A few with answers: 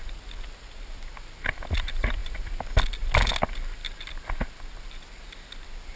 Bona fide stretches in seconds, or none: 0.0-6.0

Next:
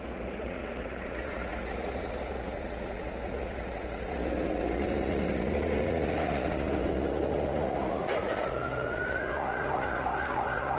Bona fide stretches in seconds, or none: none